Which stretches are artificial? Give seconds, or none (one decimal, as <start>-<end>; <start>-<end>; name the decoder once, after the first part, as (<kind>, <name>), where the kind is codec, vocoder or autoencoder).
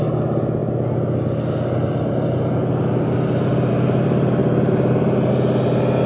none